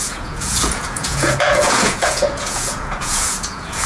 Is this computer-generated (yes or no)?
yes